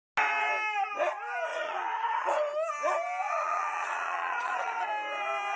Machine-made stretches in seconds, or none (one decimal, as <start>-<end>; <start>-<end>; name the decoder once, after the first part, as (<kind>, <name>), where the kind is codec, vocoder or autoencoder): 1.5-2.3 (vocoder, Vocos); 3.2-4.9